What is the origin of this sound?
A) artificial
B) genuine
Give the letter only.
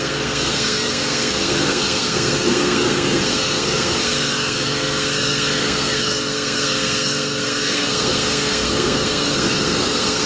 A